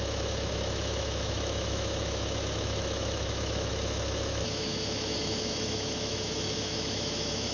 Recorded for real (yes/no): no